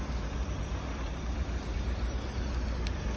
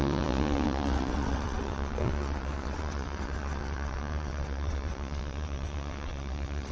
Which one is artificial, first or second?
second